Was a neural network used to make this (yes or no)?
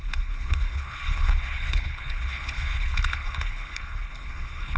yes